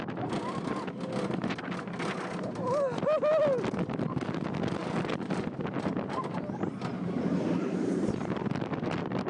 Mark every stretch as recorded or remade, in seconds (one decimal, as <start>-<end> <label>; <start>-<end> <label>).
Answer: 0.0-9.3 recorded